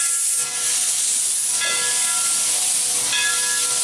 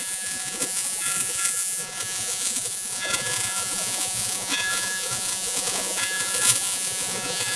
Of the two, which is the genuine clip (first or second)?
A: first